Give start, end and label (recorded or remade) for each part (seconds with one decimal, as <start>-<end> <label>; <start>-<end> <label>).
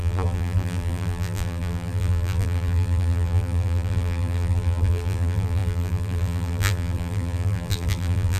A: 0.0-8.4 remade